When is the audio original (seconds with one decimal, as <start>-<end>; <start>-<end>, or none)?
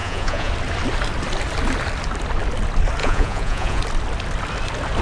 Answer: 0.5-3.0; 3.8-5.0